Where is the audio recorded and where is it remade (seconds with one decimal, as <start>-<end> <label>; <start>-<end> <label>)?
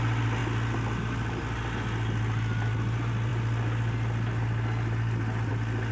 0.0-5.9 recorded